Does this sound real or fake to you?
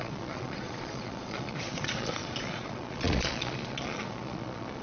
fake